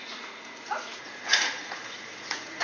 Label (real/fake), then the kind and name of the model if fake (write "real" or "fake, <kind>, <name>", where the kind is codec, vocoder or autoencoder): fake, vocoder, Vocos